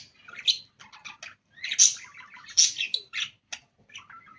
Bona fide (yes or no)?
yes